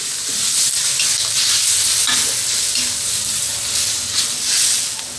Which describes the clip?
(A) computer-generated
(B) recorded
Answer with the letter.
B